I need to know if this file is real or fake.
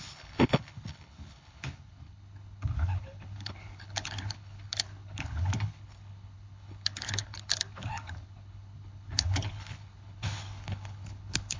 fake